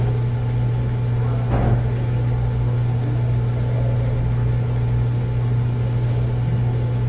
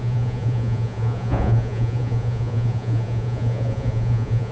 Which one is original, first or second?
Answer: first